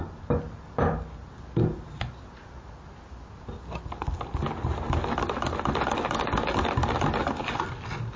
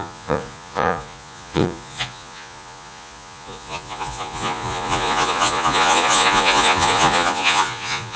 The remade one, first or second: second